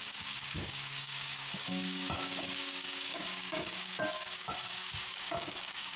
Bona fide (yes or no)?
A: no